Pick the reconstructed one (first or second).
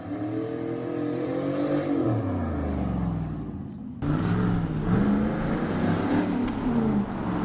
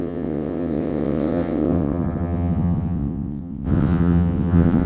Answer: second